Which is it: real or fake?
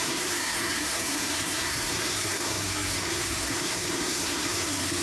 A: fake